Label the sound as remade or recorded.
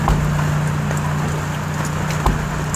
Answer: recorded